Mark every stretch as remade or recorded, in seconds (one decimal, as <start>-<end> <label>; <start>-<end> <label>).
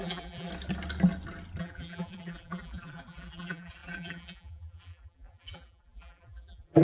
0.0-0.5 remade; 0.5-1.6 recorded; 1.6-6.8 remade